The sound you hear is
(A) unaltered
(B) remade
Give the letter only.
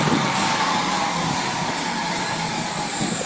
B